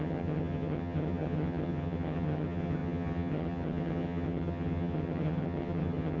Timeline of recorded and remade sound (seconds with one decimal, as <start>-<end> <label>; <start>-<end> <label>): 0.0-6.2 remade